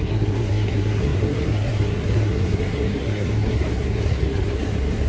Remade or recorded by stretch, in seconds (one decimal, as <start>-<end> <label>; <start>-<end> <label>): 0.0-5.1 remade